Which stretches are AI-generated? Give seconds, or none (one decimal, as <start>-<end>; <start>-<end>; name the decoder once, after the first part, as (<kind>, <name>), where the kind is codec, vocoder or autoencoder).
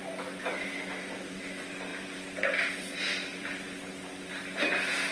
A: 1.9-4.3 (vocoder, BigVGAN v2)